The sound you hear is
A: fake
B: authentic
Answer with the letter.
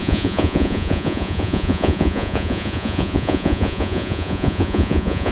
A